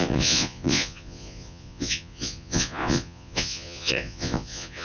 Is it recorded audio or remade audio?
remade